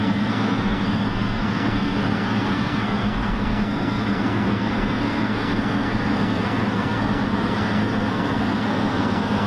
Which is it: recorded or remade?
remade